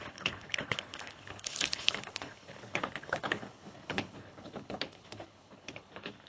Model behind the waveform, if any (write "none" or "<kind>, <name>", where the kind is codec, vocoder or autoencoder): codec, HILCodec